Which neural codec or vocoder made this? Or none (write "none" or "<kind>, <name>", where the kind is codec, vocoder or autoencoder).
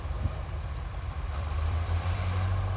vocoder, BigVGAN v2